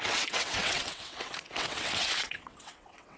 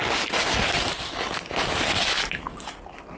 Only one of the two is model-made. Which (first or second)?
first